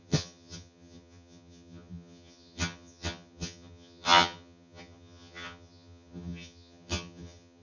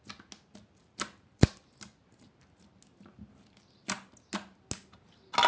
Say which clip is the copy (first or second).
first